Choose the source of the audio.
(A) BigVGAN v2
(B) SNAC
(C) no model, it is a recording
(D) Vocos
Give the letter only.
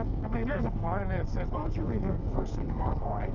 B